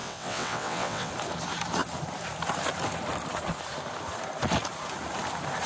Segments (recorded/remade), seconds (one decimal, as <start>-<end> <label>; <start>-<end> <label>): 0.0-1.1 remade; 1.1-5.7 recorded